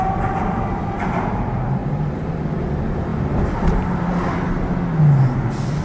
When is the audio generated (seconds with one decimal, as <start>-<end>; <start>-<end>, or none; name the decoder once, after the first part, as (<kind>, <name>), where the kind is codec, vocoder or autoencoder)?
none